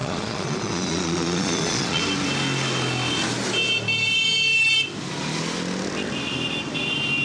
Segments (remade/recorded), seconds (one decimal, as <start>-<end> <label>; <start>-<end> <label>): 0.0-2.0 remade; 2.0-7.2 recorded